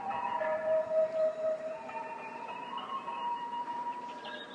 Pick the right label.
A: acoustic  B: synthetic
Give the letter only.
B